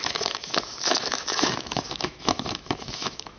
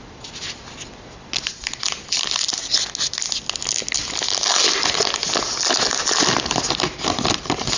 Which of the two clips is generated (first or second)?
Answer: first